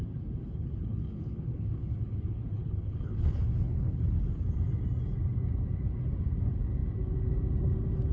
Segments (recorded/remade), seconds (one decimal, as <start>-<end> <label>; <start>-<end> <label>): 0.0-0.4 recorded; 0.4-4.2 remade; 4.2-8.1 recorded